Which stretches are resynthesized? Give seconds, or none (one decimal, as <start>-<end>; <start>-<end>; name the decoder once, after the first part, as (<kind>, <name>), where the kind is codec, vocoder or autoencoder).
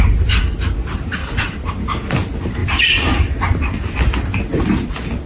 1.2-1.7 (vocoder, Vocos)